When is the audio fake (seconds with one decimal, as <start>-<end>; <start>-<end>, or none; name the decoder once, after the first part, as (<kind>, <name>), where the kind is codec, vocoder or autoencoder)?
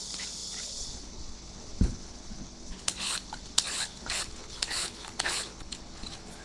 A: 0.0-6.4 (codec, HILCodec)